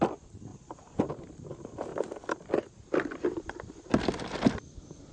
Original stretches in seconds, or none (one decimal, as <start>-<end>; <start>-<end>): 0.0-5.1